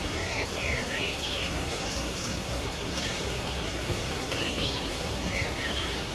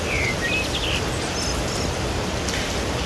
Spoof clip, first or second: first